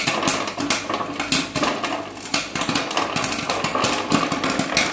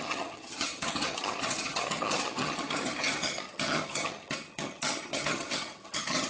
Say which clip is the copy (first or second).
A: second